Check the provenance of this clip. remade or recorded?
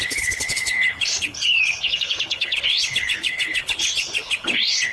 remade